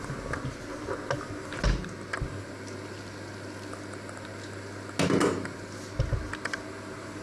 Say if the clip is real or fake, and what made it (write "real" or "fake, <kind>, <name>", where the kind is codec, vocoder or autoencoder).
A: real